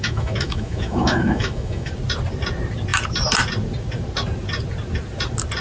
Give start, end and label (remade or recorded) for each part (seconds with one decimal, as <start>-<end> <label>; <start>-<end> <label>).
0.0-1.9 remade; 1.9-5.6 recorded